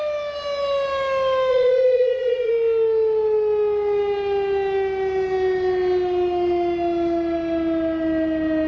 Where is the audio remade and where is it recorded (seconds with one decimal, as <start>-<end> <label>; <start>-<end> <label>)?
0.0-1.5 recorded; 1.5-2.5 remade; 2.5-8.7 recorded